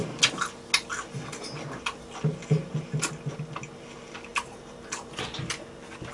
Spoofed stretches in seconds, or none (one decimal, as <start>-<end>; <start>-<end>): 4.3-5.2